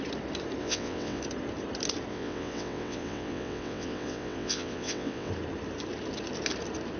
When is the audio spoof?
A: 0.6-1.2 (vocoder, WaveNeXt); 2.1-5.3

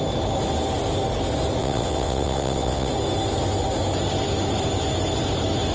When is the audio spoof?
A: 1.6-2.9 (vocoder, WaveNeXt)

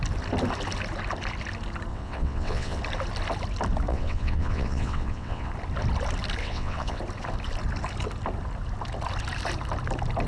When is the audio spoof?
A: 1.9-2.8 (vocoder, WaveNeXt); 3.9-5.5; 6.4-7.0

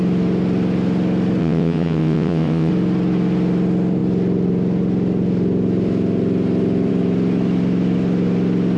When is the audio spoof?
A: 1.4-2.7 (vocoder, WaveNeXt)

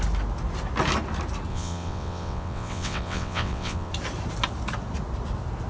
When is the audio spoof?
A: 1.5-3.9 (vocoder, WaveNeXt)